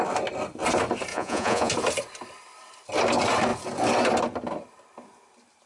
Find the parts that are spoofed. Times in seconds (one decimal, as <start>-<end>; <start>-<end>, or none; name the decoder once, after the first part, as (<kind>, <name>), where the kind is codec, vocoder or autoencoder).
1.1-1.7 (vocoder, Vocos)